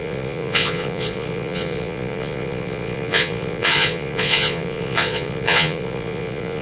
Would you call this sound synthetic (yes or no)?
yes